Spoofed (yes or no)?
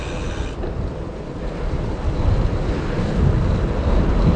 no